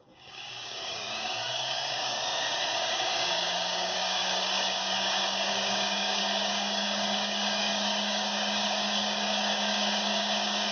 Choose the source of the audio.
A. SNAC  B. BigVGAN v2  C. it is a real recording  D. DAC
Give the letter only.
D